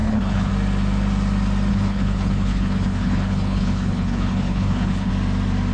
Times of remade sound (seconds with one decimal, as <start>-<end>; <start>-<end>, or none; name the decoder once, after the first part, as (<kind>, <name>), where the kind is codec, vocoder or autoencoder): 0.0-0.5 (codec, HILCodec); 1.7-5.1